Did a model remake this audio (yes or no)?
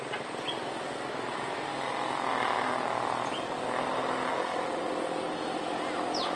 no